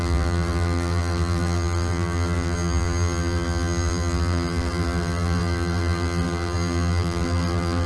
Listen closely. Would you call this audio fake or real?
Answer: fake